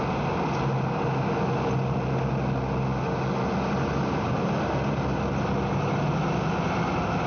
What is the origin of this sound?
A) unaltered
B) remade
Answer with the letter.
A